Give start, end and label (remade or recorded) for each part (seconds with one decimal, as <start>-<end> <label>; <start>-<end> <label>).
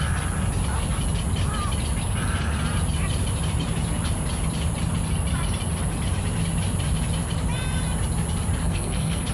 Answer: 0.0-8.6 recorded; 8.6-9.3 remade